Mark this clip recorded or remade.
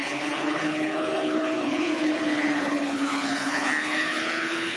remade